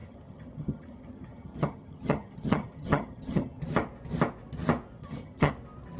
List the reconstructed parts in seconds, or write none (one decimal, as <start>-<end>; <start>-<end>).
0.0-3.6; 5.0-5.5